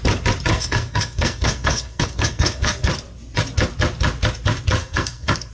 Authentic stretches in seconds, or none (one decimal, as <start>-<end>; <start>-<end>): 0.0-0.5; 2.9-4.8